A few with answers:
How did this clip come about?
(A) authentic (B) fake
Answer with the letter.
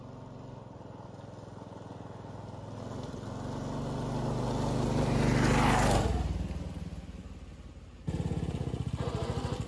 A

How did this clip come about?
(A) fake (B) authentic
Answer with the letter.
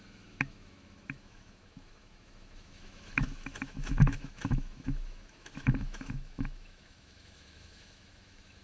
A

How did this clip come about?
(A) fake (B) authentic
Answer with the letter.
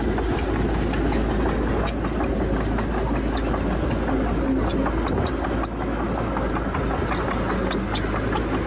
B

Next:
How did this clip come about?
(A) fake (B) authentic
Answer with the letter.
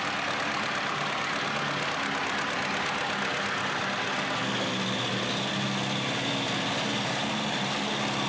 B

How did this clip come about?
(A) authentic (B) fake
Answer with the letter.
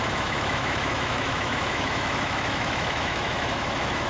B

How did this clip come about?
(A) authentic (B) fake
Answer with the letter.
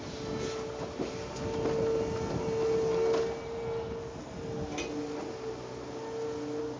A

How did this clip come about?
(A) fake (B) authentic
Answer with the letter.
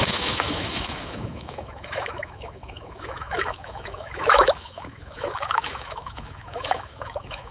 A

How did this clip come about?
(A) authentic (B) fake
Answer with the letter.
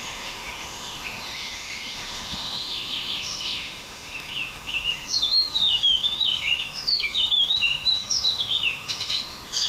B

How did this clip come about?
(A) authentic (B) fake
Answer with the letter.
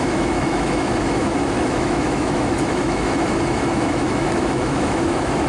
B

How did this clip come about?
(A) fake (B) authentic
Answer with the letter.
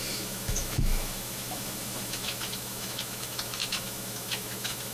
A